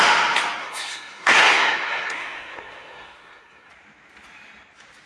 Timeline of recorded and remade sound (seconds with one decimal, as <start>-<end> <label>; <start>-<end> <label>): 0.0-0.6 recorded; 0.6-3.7 remade; 3.7-5.1 recorded